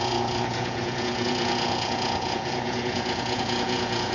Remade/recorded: remade